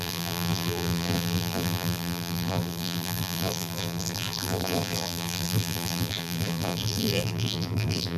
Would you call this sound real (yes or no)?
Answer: no